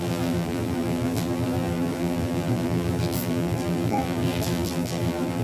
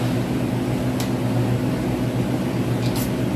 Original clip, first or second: second